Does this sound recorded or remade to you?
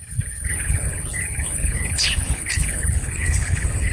remade